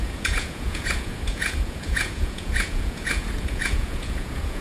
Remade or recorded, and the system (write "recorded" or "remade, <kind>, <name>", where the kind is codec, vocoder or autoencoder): remade, vocoder, Vocos